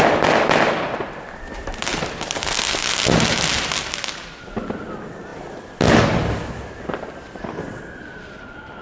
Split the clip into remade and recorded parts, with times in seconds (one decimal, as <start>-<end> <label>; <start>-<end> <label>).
0.0-8.8 recorded